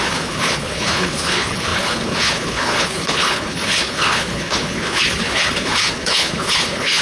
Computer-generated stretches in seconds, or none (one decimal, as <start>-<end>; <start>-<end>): 0.0-7.0